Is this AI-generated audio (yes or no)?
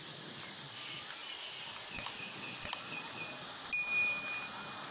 no